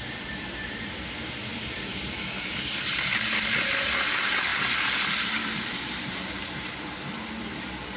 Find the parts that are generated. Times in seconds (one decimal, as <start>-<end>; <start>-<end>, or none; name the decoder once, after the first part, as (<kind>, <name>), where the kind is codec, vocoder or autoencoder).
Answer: 0.0-4.5 (vocoder, BigVGAN v2); 5.4-8.0